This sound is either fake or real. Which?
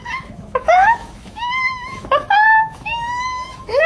fake